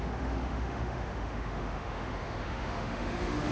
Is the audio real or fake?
fake